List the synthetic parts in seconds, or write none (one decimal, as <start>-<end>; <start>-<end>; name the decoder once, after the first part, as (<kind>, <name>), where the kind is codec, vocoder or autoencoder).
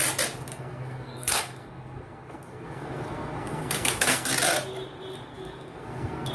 0.5-4.3 (codec, SNAC); 5.3-6.3